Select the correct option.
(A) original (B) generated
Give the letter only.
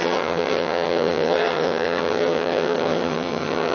B